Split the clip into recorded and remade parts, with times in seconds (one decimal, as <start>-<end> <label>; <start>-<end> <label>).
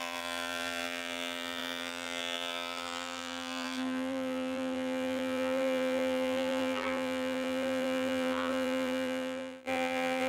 0.0-10.3 remade